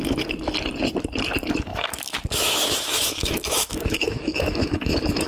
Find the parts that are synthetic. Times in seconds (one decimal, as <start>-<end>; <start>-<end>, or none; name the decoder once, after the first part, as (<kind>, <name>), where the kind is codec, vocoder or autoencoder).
1.7-5.3 (autoencoder, DAC-VAE)